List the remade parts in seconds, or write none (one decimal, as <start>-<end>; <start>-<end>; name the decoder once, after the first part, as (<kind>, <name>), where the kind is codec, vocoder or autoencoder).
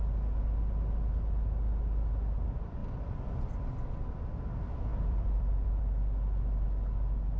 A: 4.9-5.8 (vocoder, BigVGAN v2)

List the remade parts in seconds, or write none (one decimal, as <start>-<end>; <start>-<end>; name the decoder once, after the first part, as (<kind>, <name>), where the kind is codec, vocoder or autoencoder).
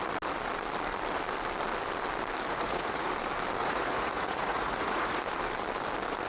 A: 2.5-3.1 (vocoder, Vocos); 3.6-5.2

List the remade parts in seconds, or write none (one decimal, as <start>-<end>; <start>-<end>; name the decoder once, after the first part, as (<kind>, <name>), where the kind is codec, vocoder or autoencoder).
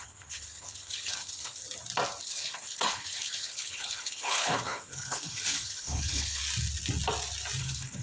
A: 0.0-1.6 (codec, HILCodec); 2.2-6.4; 7.6-8.0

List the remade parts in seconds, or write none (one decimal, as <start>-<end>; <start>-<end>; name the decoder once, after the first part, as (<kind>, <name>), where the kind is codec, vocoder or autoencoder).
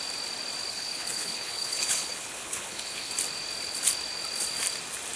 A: 0.7-3.1 (codec, HILCodec)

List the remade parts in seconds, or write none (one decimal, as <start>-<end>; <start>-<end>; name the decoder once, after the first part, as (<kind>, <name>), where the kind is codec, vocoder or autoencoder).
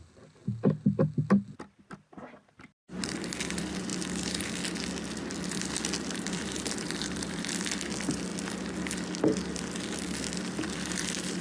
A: 0.0-0.4 (vocoder, BigVGAN v2); 1.6-3.9; 5.5-8.3; 10.4-11.4